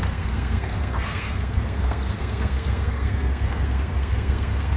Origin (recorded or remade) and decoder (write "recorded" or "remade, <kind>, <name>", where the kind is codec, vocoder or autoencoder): remade, codec, SNAC